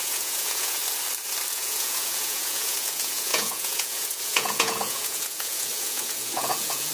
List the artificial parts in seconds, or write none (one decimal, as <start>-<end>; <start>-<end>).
0.0-0.8; 1.5-6.9